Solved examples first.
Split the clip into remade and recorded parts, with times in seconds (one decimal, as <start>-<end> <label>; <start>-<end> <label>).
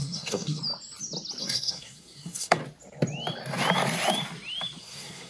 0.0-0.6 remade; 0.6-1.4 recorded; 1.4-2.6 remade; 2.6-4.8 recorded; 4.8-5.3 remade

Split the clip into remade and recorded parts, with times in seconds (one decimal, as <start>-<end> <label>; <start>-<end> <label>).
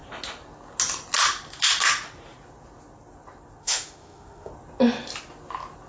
0.0-3.6 recorded; 3.6-4.5 remade; 4.5-5.9 recorded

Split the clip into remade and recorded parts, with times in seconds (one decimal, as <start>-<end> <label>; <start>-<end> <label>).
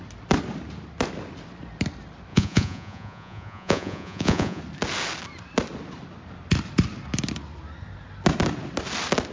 0.0-2.3 recorded; 2.3-4.6 remade; 4.6-9.3 recorded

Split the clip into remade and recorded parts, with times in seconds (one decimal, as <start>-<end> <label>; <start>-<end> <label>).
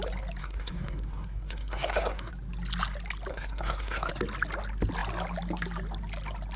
0.0-0.4 recorded; 0.4-2.3 remade; 2.3-3.3 recorded; 3.3-4.1 remade; 4.1-6.6 recorded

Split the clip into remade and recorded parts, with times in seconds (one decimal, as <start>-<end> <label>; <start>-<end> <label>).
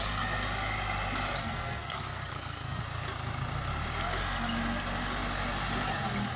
0.0-1.4 recorded; 1.4-2.8 remade; 2.8-6.4 recorded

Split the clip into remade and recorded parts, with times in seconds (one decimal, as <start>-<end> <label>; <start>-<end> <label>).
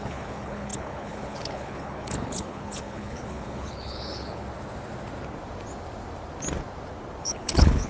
0.0-4.4 remade; 4.4-7.2 recorded; 7.2-7.9 remade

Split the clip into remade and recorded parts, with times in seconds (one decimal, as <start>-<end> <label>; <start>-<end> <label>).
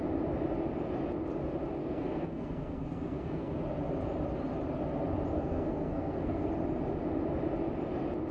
0.0-1.8 recorded; 1.8-3.5 remade; 3.5-5.3 recorded; 5.3-6.5 remade; 6.5-8.3 recorded